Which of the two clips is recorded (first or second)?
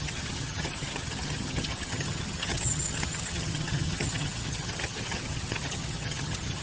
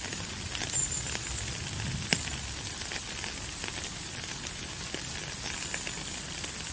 second